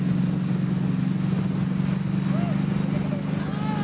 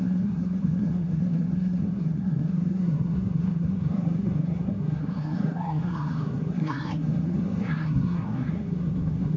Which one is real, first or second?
first